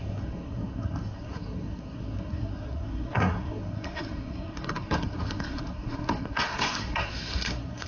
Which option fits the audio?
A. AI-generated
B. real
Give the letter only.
A